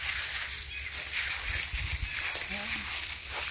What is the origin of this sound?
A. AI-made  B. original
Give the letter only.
B